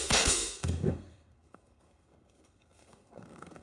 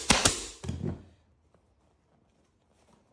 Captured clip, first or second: second